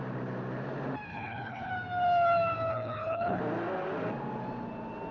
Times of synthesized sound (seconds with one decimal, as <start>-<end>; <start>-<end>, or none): 1.1-1.7; 2.7-3.4